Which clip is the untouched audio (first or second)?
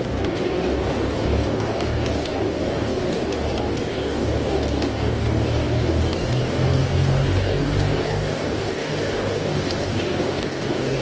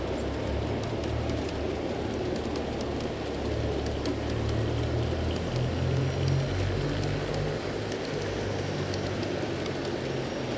second